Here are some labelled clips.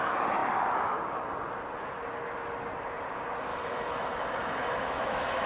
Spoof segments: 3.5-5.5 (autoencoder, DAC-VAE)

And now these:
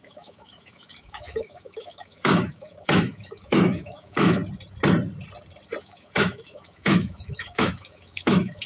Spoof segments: 0.0-4.4 (autoencoder, DAC-VAE); 5.8-8.7

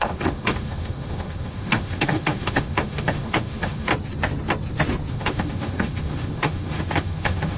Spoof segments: 0.0-3.9 (autoencoder, DAC-VAE); 5.1-7.6

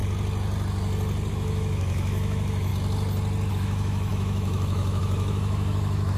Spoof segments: 1.3-2.7 (autoencoder, DAC-VAE); 3.5-6.2

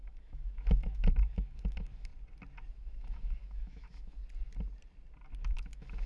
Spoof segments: 0.0-2.1 (autoencoder, DAC-VAE); 2.7-4.2; 5.4-6.1

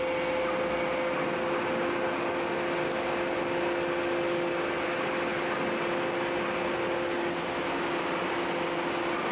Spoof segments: none

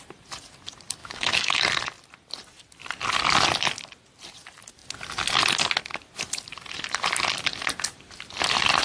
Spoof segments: 1.0-1.6 (autoencoder, DAC-VAE)